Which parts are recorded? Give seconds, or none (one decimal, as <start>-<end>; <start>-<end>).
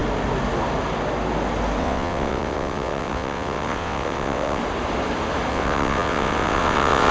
0.0-1.8; 4.6-5.5